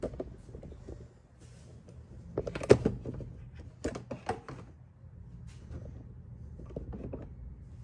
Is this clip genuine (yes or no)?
yes